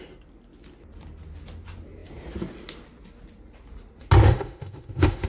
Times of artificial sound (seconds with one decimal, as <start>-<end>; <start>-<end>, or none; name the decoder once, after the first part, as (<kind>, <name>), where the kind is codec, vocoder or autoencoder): 4.2-5.3 (autoencoder, DAC-VAE)